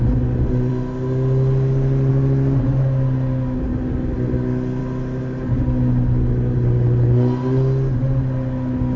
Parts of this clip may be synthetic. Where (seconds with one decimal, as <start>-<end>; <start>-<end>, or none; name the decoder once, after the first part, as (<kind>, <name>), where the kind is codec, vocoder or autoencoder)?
none